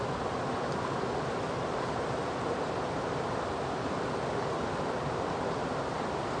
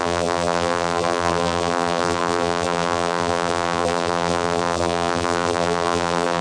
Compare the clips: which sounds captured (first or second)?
first